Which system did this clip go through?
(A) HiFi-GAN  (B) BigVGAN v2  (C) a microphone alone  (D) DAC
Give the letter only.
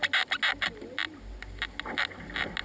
C